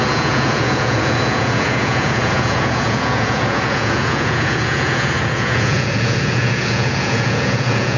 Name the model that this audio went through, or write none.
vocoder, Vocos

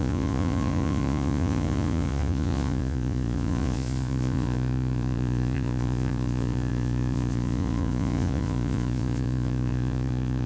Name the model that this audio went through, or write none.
vocoder, Vocos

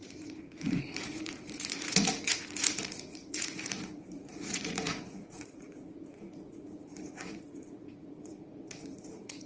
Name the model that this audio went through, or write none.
vocoder, Vocos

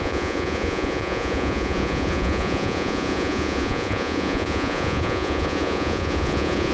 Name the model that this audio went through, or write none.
vocoder, Vocos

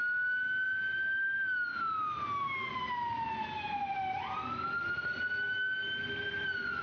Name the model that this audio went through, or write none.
none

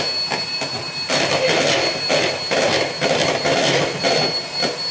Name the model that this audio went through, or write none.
none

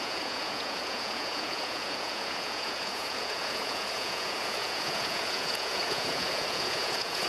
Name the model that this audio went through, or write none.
vocoder, Vocos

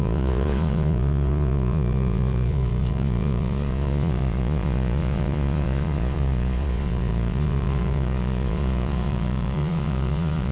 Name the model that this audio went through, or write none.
vocoder, Vocos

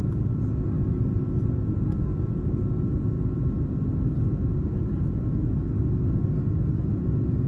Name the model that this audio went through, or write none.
none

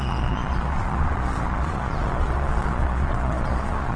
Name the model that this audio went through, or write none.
vocoder, Vocos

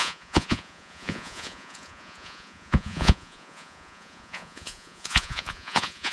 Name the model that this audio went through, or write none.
vocoder, Vocos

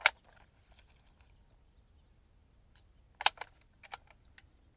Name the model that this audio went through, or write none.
none